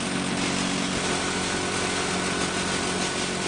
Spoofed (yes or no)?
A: no